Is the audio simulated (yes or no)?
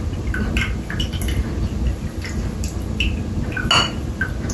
no